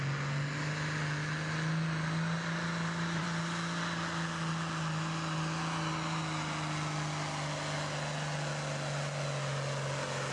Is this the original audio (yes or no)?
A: yes